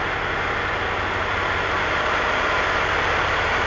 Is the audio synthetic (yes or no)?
no